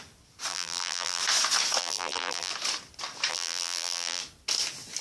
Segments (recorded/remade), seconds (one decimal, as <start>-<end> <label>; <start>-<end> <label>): 0.0-0.5 recorded; 0.5-1.2 remade; 1.2-1.8 recorded; 1.8-2.5 remade; 2.5-3.3 recorded; 3.3-4.2 remade; 4.2-5.0 recorded